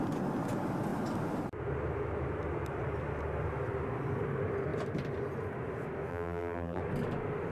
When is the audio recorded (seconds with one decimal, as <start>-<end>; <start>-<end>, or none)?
0.0-6.1; 6.8-7.5